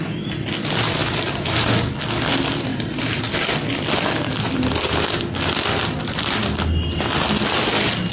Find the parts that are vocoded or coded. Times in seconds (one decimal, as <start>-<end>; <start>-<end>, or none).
1.0-1.6; 2.7-3.2